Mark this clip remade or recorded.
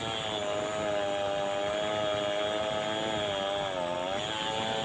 recorded